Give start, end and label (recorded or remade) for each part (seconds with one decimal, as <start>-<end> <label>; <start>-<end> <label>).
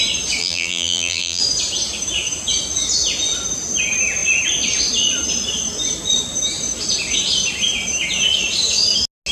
0.0-0.4 recorded; 0.4-1.4 remade; 1.4-9.3 recorded